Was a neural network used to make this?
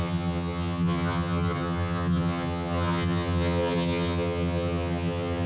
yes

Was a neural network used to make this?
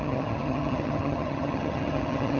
yes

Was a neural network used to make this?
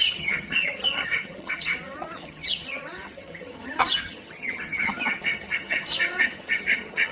yes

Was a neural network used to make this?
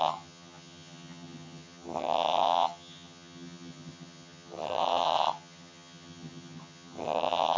yes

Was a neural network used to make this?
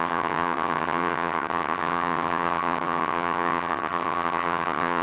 yes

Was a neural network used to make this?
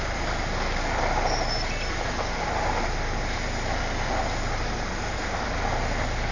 no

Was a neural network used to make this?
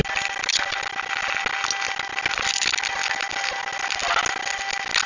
no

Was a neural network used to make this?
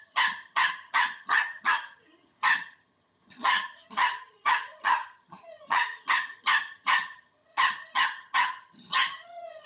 yes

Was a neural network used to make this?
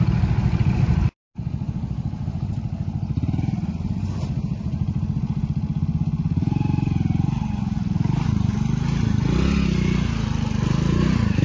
no